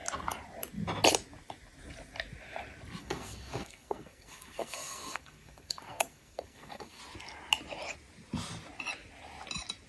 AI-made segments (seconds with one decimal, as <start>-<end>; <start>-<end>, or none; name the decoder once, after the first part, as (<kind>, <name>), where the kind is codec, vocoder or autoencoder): 3.0-7.0 (codec, SNAC)